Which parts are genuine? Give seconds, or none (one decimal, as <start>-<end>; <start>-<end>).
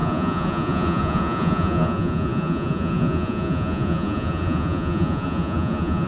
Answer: none